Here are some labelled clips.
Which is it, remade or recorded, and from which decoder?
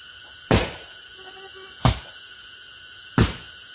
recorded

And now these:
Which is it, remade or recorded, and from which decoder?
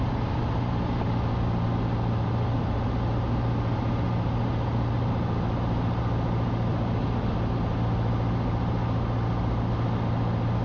recorded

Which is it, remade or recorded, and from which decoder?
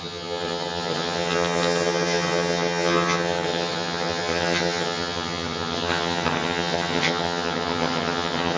remade, vocoder, HiFi-GAN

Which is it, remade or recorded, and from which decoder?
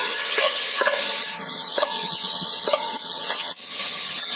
remade, vocoder, HiFi-GAN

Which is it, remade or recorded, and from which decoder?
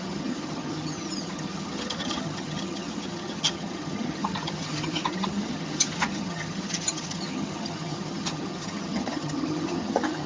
remade, vocoder, HiFi-GAN